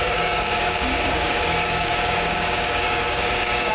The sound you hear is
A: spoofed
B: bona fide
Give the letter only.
A